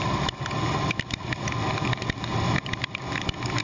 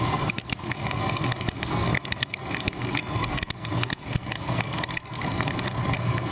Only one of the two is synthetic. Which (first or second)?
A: second